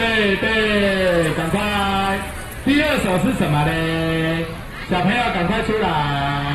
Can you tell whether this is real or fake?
real